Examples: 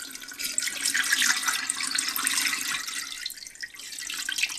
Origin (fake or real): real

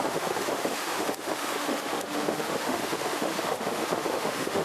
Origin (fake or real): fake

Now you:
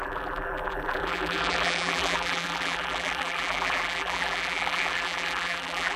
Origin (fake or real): fake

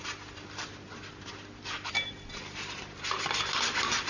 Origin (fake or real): real